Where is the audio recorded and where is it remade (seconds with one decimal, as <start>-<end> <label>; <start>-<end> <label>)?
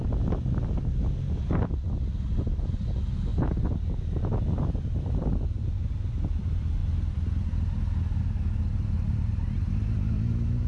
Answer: 0.0-10.7 recorded